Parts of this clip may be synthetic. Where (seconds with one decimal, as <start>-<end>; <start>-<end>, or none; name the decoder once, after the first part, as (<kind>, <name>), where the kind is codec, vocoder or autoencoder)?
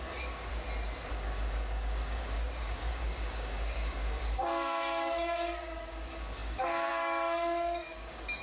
0.0-0.5 (codec, DAC); 1.1-8.4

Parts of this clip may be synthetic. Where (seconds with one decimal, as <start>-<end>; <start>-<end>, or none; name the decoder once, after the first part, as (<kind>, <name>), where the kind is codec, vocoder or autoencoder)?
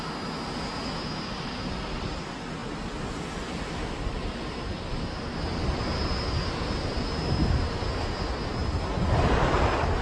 none